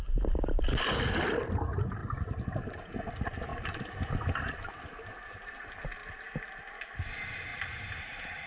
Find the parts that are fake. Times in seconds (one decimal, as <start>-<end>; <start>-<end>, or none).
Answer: 2.0-2.8; 3.5-4.7; 7.5-8.5